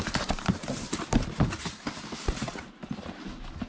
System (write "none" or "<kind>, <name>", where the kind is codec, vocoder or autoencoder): none